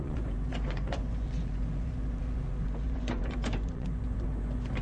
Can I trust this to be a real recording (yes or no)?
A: no